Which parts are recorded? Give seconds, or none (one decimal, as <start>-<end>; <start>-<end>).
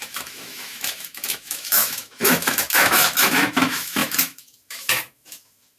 none